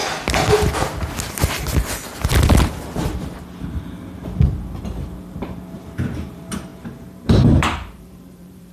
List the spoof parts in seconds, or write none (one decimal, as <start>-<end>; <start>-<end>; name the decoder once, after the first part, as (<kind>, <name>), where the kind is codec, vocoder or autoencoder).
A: 4.7-8.7 (vocoder, BigVGAN v2)